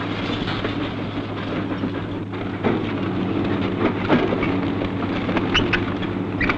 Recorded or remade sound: recorded